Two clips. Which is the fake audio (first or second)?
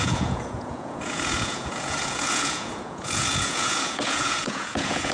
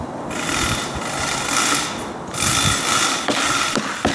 first